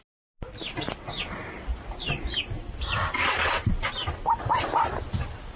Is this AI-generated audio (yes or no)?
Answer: no